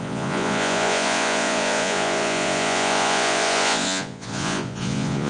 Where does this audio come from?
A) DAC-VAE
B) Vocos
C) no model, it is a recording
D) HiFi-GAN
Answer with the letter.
B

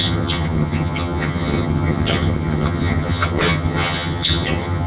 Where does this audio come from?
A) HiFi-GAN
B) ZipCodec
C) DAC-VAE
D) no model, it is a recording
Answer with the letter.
A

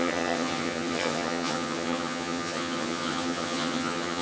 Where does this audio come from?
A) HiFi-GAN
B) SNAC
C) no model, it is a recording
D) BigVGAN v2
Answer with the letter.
A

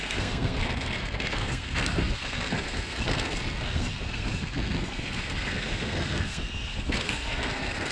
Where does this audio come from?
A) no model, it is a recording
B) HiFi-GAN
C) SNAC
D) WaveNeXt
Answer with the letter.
C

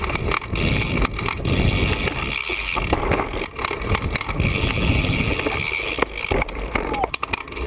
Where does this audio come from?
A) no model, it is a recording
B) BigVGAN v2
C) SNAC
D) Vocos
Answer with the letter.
A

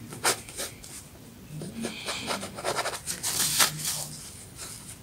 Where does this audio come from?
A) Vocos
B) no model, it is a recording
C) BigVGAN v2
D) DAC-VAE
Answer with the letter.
B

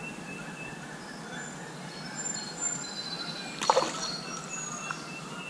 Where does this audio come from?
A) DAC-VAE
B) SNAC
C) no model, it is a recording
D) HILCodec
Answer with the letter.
C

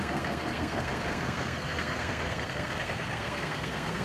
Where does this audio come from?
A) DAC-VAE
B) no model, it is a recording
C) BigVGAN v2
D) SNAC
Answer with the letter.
D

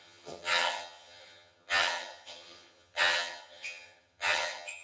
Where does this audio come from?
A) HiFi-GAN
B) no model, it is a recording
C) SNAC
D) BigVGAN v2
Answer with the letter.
A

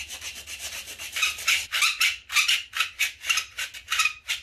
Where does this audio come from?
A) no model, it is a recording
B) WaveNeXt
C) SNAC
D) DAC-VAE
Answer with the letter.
A